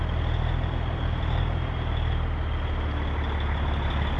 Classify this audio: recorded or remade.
recorded